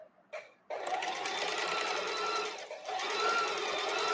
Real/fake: real